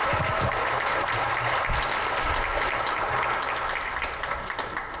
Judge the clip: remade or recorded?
recorded